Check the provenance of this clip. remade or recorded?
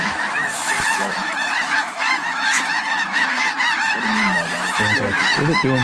remade